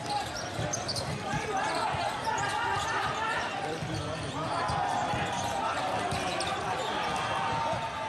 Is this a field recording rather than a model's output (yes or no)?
yes